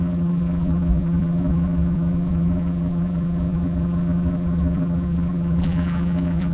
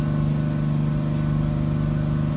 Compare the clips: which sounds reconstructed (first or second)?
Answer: first